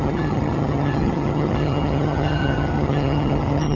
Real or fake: fake